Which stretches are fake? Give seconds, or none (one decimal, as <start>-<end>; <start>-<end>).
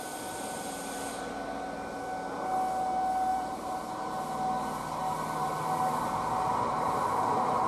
3.3-4.1